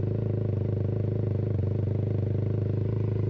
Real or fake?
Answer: real